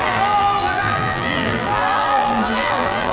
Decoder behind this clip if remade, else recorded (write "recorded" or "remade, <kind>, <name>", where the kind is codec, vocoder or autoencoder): remade, vocoder, BigVGAN v2